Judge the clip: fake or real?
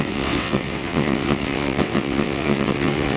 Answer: fake